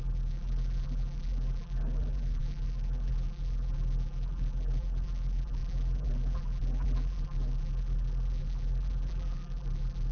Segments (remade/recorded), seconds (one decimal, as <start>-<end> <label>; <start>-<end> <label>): 0.0-10.1 remade